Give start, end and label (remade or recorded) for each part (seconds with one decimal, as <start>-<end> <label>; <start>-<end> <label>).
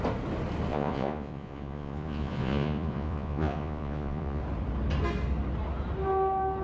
0.0-0.7 recorded; 0.7-4.4 remade; 4.4-6.6 recorded